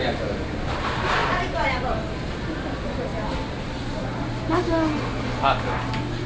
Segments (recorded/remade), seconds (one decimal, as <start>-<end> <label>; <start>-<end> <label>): 0.0-6.3 recorded